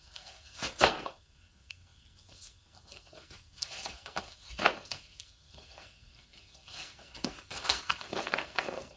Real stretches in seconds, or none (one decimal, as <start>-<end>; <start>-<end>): none